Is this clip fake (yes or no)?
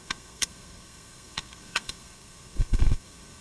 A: yes